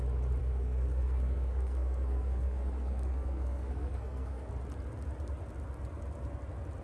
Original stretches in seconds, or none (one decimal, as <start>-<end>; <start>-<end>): 0.0-0.4; 4.5-6.8